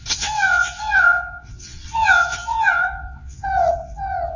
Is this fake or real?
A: fake